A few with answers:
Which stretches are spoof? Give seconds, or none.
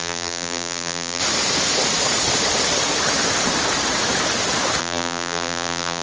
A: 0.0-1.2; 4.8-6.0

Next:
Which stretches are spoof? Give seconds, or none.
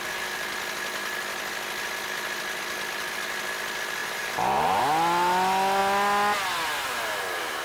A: 4.0-4.8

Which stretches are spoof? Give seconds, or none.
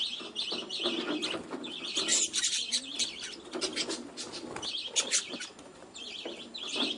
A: none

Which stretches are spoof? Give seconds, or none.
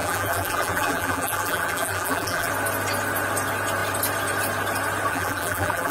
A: 0.0-2.5; 5.1-5.9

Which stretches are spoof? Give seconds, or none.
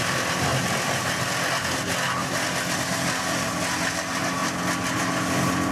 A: none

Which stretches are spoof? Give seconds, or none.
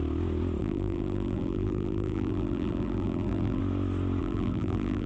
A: 0.6-3.6; 4.2-5.1